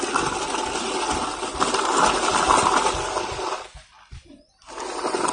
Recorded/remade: recorded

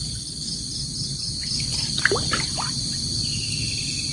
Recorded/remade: recorded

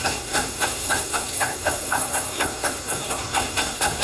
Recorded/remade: remade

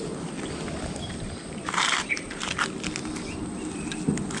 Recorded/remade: recorded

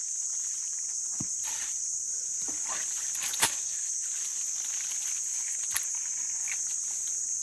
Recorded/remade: recorded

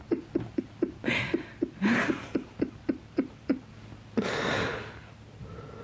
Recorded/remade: recorded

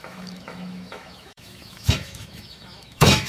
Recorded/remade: remade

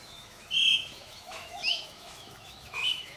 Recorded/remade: remade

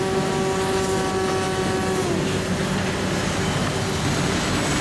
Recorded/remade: recorded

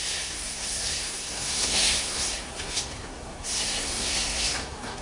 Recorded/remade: remade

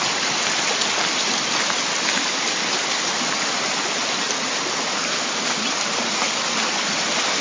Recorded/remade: recorded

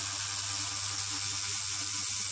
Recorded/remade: recorded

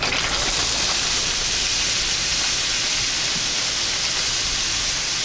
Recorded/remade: recorded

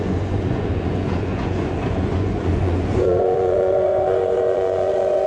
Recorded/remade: remade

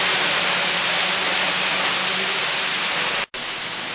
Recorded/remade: recorded